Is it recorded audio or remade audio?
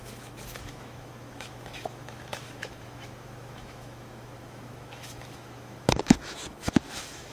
remade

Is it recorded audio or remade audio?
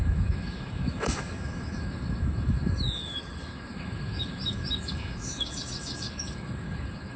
remade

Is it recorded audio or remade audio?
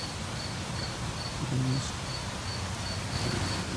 recorded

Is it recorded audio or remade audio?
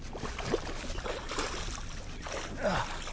recorded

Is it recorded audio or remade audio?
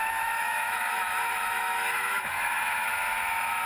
remade